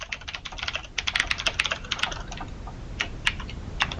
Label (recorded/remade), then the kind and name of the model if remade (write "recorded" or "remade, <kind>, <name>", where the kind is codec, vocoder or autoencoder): recorded